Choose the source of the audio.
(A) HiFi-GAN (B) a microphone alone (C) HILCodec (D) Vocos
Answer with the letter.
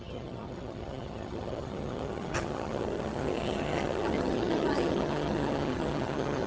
A